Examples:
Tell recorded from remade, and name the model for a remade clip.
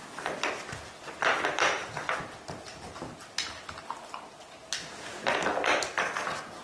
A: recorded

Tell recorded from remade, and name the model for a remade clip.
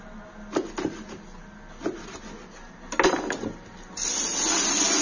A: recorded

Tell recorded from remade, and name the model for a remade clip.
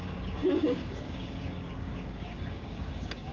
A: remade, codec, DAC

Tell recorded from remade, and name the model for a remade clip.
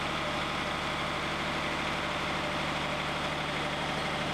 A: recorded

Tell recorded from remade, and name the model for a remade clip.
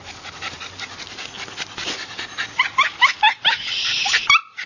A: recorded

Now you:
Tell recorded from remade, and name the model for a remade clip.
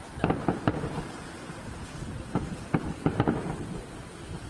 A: recorded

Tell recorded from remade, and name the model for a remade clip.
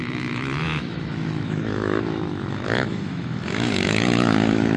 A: remade, autoencoder, DAC-VAE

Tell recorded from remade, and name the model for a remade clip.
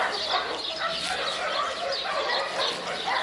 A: recorded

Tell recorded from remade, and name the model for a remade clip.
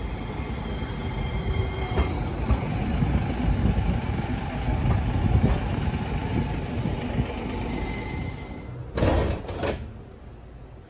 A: recorded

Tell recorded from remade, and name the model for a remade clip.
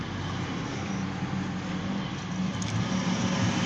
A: recorded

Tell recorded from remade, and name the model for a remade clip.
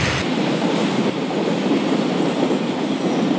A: recorded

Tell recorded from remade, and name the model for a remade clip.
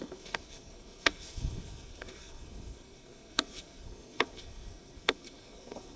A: remade, codec, SNAC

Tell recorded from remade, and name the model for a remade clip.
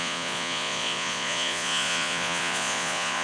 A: remade, vocoder, Vocos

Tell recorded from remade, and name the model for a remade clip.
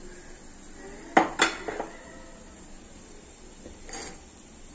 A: recorded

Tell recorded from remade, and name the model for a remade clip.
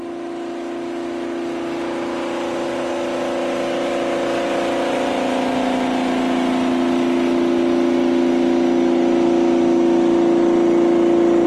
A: recorded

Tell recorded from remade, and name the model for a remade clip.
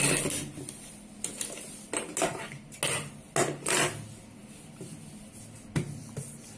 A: recorded